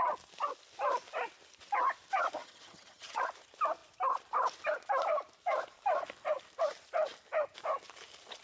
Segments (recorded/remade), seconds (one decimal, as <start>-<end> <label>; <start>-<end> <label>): 0.0-2.4 recorded; 2.4-3.2 remade; 3.2-8.4 recorded